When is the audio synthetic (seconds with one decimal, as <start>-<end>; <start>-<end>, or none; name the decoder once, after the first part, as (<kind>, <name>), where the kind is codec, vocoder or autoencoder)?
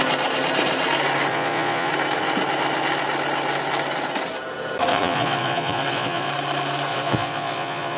1.3-1.9 (vocoder, Vocos); 4.9-6.3; 6.9-8.0